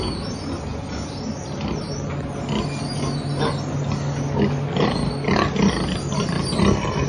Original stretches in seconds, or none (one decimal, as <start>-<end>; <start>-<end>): 0.0-7.1